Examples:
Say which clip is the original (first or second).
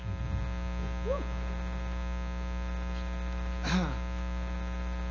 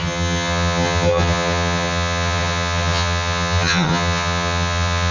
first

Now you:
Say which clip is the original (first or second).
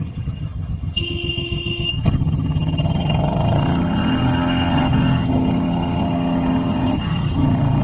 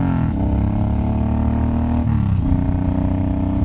second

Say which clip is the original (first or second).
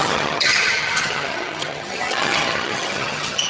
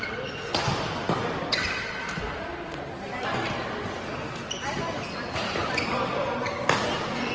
second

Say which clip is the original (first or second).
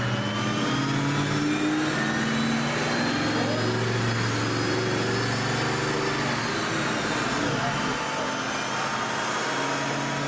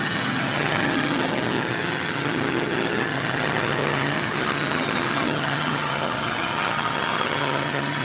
first